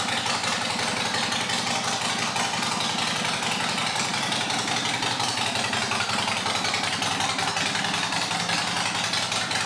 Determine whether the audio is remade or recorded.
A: recorded